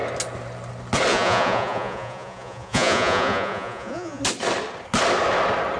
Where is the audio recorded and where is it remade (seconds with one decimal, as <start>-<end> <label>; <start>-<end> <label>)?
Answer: 0.0-1.1 recorded; 1.1-4.2 remade; 4.2-5.8 recorded

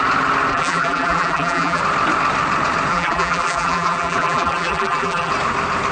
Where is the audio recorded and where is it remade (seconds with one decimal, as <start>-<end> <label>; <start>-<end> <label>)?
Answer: 0.0-0.5 recorded; 0.5-1.8 remade; 1.8-2.9 recorded; 2.9-5.3 remade; 5.3-5.9 recorded

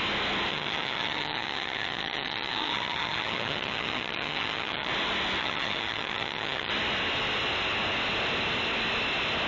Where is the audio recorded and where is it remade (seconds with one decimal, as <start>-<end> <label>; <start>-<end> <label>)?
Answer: 0.0-0.5 recorded; 0.5-4.9 remade; 4.9-5.4 recorded; 5.4-6.7 remade; 6.7-9.5 recorded

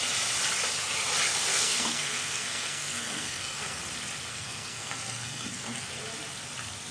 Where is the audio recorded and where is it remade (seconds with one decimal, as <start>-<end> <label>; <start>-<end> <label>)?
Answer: 0.0-1.5 recorded; 1.5-3.8 remade; 3.8-4.3 recorded; 4.3-6.0 remade; 6.0-6.9 recorded

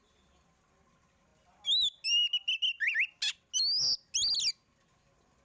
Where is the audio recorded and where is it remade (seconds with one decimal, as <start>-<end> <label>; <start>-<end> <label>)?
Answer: 0.0-5.4 recorded

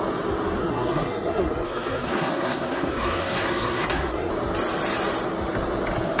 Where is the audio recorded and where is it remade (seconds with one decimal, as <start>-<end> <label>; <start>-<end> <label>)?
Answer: 0.0-0.6 recorded; 0.6-4.3 remade; 4.3-6.2 recorded

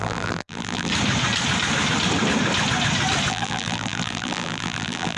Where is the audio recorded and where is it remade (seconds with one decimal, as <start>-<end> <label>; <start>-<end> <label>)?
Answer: 0.0-0.9 remade; 0.9-3.3 recorded; 3.3-5.2 remade

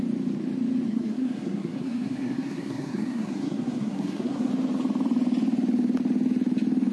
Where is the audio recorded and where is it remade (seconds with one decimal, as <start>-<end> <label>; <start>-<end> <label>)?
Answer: 0.0-0.9 recorded; 0.9-4.5 remade; 4.5-6.9 recorded